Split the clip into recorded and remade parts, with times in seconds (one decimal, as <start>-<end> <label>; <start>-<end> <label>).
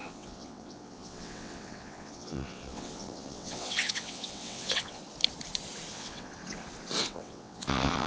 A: 0.0-5.0 remade; 5.0-5.9 recorded; 5.9-6.4 remade; 6.4-7.0 recorded; 7.0-8.1 remade